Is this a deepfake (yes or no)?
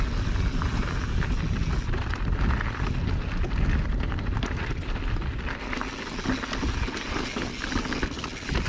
no